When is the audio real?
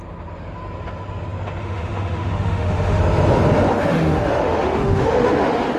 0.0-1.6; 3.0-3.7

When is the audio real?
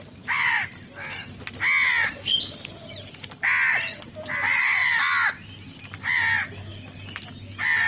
0.0-7.9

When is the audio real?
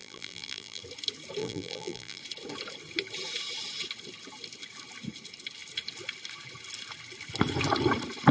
0.8-1.4; 2.2-8.3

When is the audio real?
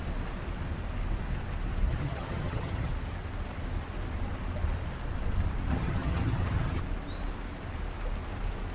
0.0-1.9; 2.9-5.7; 6.8-8.7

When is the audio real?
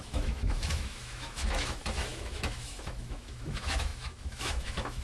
none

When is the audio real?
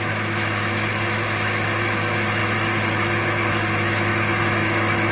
none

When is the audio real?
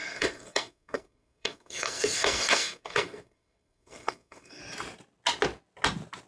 4.6-6.3